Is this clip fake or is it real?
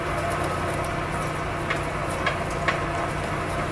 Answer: real